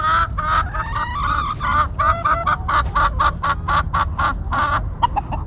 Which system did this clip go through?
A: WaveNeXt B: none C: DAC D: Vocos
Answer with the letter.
B